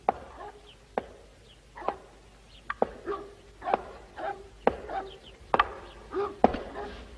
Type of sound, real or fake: real